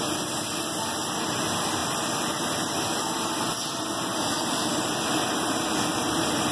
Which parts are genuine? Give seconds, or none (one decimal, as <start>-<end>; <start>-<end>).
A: 0.0-1.8; 4.7-6.5